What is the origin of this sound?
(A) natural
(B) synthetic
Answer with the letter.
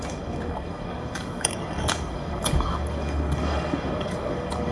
B